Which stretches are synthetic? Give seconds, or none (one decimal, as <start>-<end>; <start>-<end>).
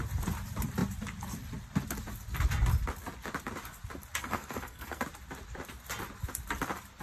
4.2-5.0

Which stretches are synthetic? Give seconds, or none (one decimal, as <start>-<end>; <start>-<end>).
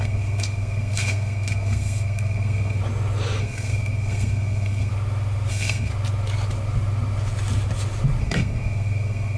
0.0-2.8; 3.4-4.9; 5.5-5.9; 8.2-9.4